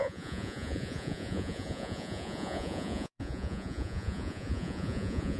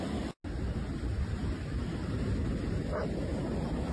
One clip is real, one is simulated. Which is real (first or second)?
second